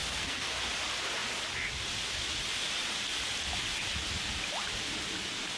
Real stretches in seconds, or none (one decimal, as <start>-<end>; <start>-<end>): 0.6-5.6